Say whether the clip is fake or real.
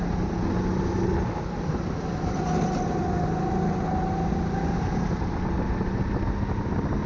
real